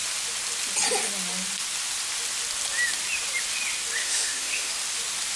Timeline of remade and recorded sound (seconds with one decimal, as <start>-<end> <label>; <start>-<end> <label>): 0.0-4.0 recorded; 4.0-4.7 remade; 4.7-5.4 recorded